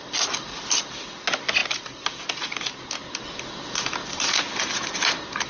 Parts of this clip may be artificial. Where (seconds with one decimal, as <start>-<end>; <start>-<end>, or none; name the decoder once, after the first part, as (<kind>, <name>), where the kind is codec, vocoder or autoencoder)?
none